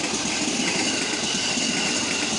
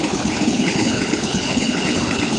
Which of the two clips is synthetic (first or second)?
second